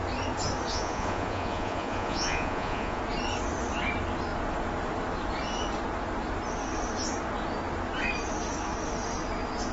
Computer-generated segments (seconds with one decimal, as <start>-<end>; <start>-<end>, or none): 0.7-3.0